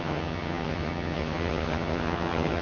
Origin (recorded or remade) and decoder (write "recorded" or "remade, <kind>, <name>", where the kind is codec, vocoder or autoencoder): remade, vocoder, HiFi-GAN